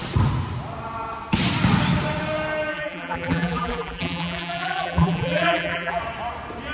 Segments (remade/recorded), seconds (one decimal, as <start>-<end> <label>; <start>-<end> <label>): 0.0-2.7 recorded; 2.7-6.0 remade; 6.0-6.7 recorded